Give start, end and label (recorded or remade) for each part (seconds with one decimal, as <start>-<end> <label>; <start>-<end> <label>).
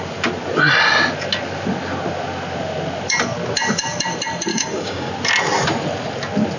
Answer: 0.0-4.5 recorded; 4.5-5.1 remade; 5.1-6.6 recorded